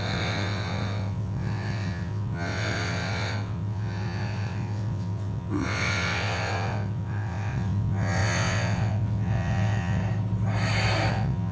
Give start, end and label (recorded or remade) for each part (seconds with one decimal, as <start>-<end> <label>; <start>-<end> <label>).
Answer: 0.0-10.0 remade; 10.0-11.1 recorded; 11.1-11.5 remade